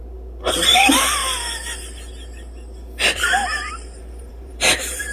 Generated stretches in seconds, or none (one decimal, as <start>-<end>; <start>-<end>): 0.6-1.2; 3.7-5.1